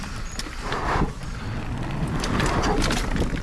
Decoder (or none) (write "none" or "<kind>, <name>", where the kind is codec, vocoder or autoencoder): none